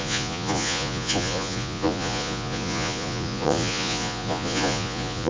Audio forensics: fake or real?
fake